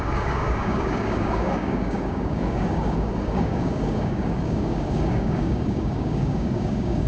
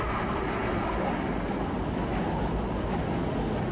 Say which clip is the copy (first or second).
first